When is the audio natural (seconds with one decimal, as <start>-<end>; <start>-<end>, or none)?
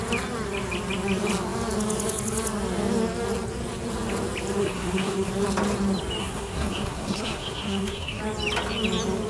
0.0-4.6; 5.3-6.2; 8.2-9.3